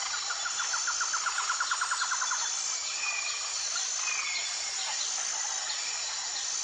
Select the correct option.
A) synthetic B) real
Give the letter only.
B